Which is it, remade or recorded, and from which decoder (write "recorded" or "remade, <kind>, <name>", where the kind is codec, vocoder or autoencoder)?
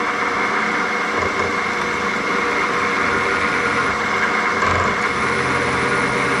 recorded